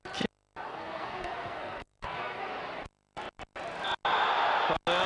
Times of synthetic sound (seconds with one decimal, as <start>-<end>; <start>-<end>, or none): 0.7-2.4